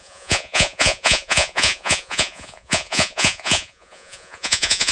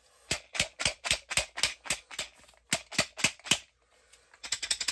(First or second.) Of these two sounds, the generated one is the first